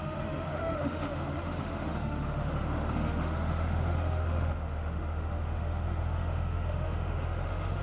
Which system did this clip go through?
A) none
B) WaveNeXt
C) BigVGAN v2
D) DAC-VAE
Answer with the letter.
D